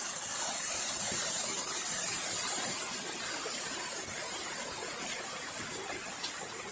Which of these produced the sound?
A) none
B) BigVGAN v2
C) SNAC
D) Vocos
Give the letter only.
B